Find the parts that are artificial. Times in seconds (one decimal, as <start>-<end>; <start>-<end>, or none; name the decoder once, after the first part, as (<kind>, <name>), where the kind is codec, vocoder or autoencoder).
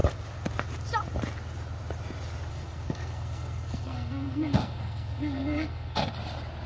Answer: 2.5-6.1 (codec, SNAC)